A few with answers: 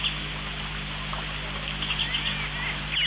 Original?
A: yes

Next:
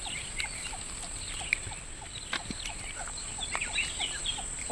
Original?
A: yes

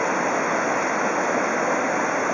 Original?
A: yes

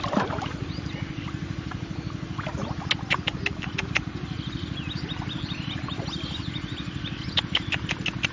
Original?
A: yes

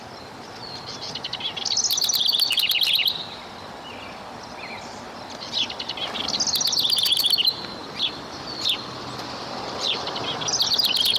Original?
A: yes